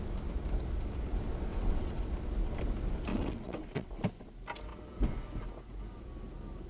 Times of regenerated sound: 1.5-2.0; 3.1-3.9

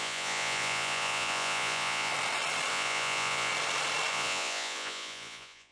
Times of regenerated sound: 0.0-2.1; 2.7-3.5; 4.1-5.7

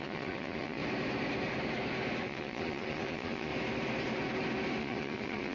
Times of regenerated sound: 0.0-0.8; 2.2-3.5; 4.8-5.5

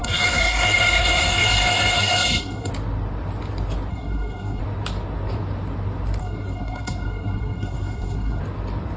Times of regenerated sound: 0.0-2.7; 3.9-4.6; 6.2-8.4